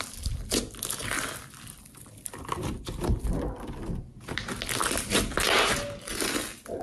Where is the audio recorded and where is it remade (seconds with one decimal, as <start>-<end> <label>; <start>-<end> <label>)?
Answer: 0.0-6.8 recorded